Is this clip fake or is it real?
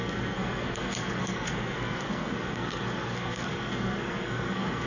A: fake